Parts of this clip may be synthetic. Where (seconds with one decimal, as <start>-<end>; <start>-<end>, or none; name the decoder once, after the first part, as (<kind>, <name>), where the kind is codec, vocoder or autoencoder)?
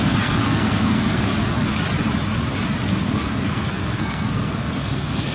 0.0-1.3 (codec, SNAC); 2.9-5.3